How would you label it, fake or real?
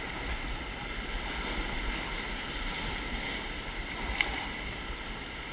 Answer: real